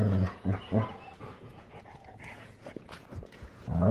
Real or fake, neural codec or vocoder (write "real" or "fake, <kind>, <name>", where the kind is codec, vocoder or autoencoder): fake, vocoder, Vocos